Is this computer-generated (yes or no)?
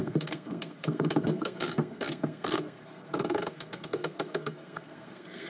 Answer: yes